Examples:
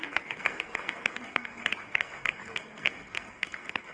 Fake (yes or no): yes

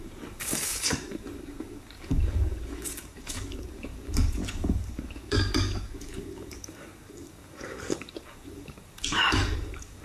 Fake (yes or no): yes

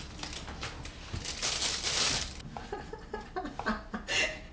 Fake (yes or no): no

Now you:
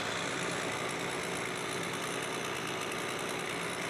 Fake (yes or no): no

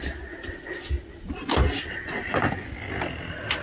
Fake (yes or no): no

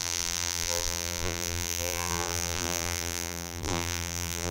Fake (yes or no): yes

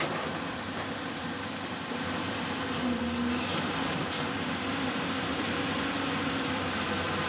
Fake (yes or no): yes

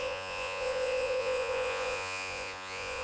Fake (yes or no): yes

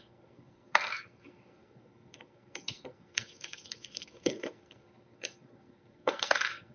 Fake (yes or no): yes